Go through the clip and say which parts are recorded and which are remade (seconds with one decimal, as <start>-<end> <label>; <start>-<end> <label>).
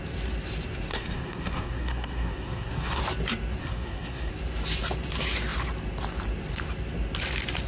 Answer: 0.0-0.9 recorded; 0.9-3.0 remade; 3.0-3.6 recorded; 3.6-4.3 remade; 4.3-7.7 recorded